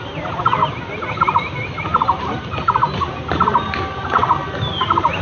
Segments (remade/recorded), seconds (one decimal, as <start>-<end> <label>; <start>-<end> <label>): 0.0-0.6 recorded; 0.6-3.1 remade; 3.1-5.2 recorded